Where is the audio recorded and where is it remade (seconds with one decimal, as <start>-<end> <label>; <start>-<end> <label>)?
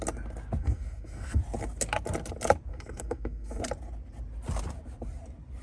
0.0-0.6 recorded; 0.6-1.4 remade; 1.4-2.7 recorded; 2.7-3.6 remade; 3.6-5.6 recorded